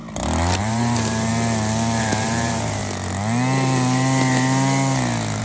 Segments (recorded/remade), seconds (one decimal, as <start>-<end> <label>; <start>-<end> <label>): 0.0-0.6 recorded; 0.6-1.3 remade; 1.3-2.0 recorded; 2.0-2.8 remade; 2.8-5.4 recorded